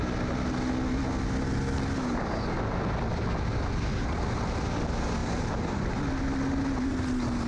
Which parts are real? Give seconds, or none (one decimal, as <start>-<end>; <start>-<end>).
0.0-5.2; 6.0-7.5